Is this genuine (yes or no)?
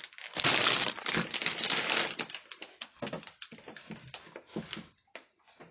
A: yes